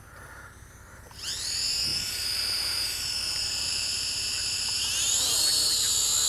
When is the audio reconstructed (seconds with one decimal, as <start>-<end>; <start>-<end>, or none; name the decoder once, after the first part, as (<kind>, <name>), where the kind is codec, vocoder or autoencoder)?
1.9-5.7 (vocoder, BigVGAN v2)